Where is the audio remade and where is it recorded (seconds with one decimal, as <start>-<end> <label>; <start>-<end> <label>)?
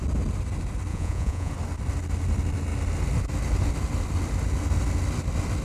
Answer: 0.0-0.9 recorded; 0.9-1.5 remade; 1.5-5.6 recorded